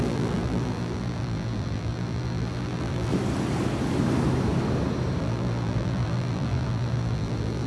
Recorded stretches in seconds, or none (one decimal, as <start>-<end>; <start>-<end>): 3.1-5.2